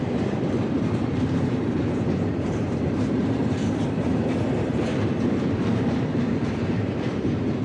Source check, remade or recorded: remade